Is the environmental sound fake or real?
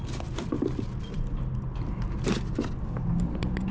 real